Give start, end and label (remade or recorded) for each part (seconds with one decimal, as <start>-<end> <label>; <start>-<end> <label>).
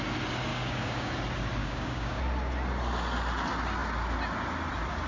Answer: 0.0-0.5 recorded; 0.5-1.1 remade; 1.1-1.6 recorded; 1.6-2.2 remade; 2.2-5.1 recorded